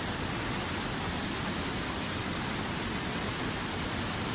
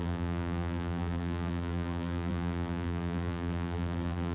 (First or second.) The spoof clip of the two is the second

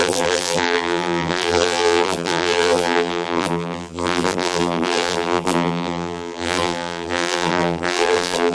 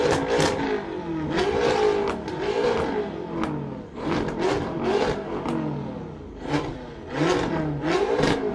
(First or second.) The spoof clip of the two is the first